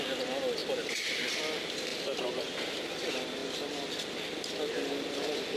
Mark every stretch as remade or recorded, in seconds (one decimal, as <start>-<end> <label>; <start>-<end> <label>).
0.0-1.9 recorded; 1.9-2.8 remade; 2.8-5.6 recorded

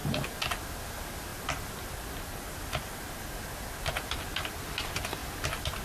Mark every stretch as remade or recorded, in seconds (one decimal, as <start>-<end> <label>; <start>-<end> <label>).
0.0-0.7 recorded; 0.7-1.3 remade; 1.3-4.2 recorded; 4.2-5.8 remade

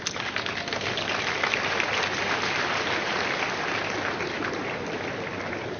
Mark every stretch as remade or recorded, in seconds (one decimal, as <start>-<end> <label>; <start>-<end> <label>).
0.0-5.8 recorded

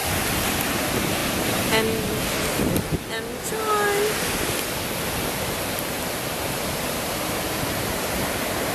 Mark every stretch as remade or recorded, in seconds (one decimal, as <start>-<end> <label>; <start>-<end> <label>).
0.0-0.7 recorded; 0.7-1.2 remade; 1.2-5.6 recorded; 5.6-8.7 remade

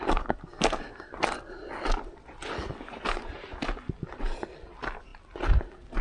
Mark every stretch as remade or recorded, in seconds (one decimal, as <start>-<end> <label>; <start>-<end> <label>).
0.0-6.0 recorded